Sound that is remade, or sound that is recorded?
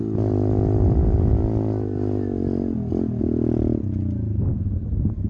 recorded